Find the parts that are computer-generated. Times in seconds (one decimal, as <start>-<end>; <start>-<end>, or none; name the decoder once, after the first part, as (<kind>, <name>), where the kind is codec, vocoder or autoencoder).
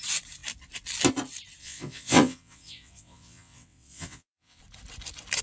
1.6-4.6 (vocoder, WaveNeXt)